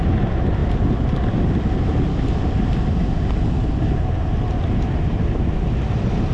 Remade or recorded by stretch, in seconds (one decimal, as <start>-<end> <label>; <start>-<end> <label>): 0.0-6.3 recorded